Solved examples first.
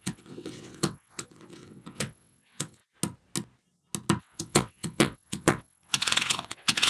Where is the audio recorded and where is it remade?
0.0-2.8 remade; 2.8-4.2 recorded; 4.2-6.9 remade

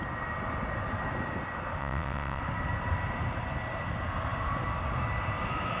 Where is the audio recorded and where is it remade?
0.0-1.8 recorded; 1.8-2.4 remade; 2.4-5.8 recorded

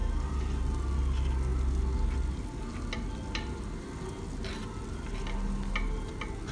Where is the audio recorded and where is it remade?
0.0-6.5 recorded

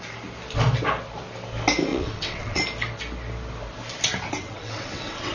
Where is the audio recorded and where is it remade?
0.0-1.9 recorded; 1.9-2.6 remade; 2.6-4.4 recorded; 4.4-5.3 remade